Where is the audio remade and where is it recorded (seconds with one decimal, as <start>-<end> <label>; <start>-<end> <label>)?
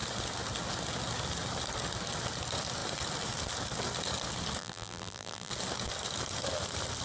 0.0-4.6 recorded; 4.6-5.5 remade; 5.5-7.0 recorded